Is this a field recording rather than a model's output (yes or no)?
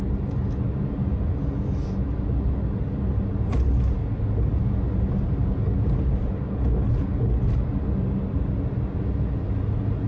yes